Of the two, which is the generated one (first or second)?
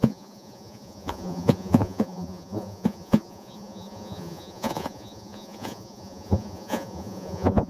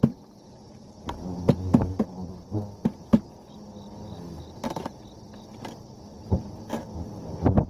first